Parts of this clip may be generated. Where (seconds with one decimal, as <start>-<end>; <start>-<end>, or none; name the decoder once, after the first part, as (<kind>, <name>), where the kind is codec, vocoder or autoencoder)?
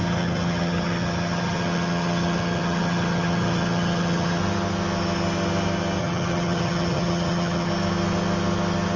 0.0-4.4 (vocoder, HiFi-GAN); 6.0-7.7